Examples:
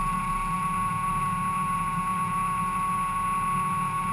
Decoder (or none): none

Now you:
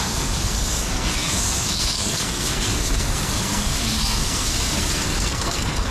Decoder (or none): codec, SNAC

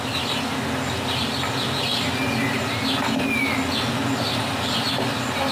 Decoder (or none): none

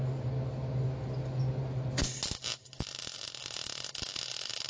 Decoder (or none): none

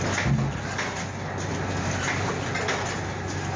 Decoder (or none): none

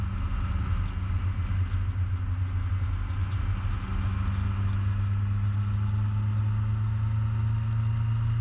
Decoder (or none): none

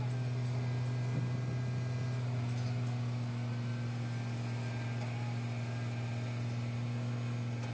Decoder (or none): none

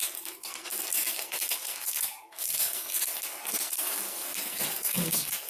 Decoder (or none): codec, SNAC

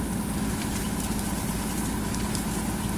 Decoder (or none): none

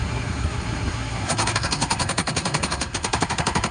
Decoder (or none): codec, SNAC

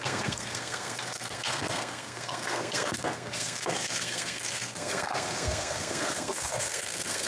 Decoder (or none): codec, SNAC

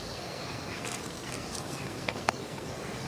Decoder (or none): codec, SNAC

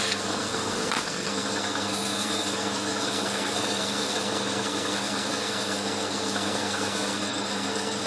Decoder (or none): codec, SNAC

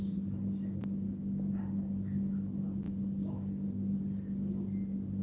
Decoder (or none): none